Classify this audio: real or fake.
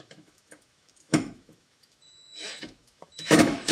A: fake